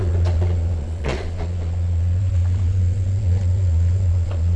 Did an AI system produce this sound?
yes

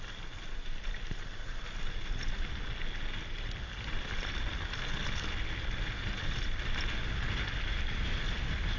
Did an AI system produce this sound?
no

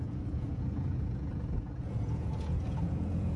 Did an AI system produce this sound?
yes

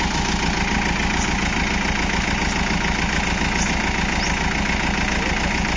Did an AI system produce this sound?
no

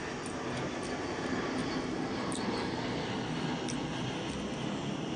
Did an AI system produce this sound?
no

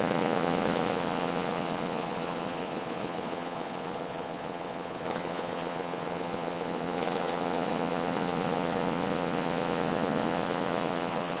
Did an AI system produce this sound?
yes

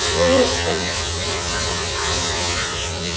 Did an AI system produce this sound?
yes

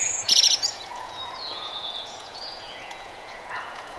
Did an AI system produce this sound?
yes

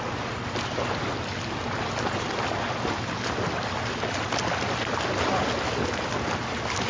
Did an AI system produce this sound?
no